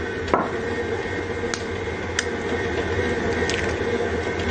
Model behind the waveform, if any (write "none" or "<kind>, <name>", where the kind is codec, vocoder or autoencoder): none